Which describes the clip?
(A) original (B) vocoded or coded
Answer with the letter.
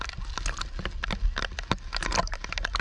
A